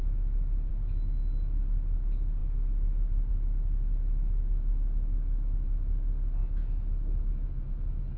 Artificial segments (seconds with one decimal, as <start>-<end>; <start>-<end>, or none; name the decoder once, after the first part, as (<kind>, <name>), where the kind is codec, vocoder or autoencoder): 6.4-6.9 (autoencoder, DAC-VAE)